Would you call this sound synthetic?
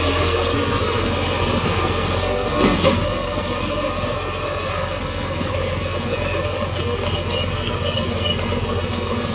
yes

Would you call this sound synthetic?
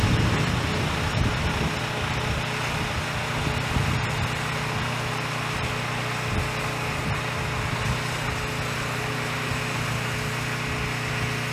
no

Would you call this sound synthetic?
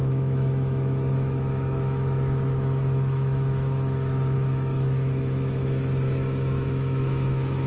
yes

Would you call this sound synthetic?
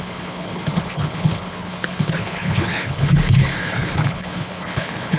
yes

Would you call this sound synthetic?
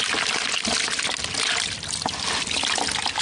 no